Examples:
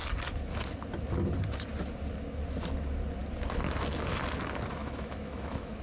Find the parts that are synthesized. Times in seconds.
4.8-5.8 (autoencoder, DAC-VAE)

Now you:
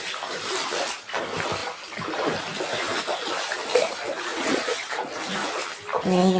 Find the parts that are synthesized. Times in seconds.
4.3-4.9 (vocoder, Vocos)

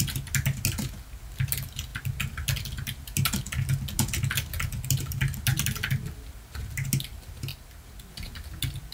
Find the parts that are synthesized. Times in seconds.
none

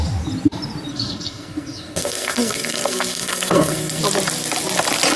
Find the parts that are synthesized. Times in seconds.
0.9-4.0 (codec, SNAC)

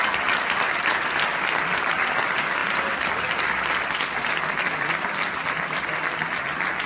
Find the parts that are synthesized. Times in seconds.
none

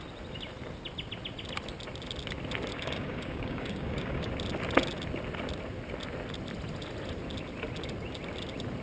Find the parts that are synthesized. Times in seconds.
2.7-4.3 (codec, DAC)